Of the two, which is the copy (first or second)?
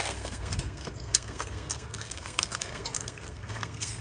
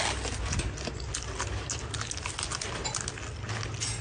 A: first